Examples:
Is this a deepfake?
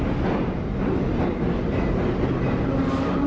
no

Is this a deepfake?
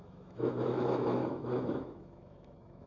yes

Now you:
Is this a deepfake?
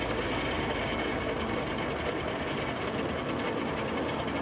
no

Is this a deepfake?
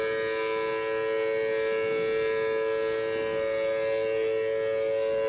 no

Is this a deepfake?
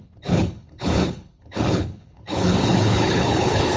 yes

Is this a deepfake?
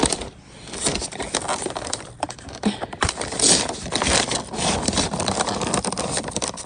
yes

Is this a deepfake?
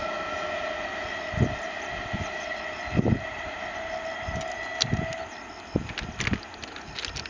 no